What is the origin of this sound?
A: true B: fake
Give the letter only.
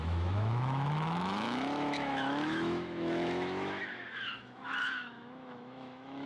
B